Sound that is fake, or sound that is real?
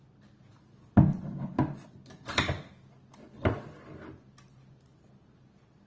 real